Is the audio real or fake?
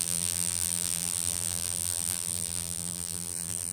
fake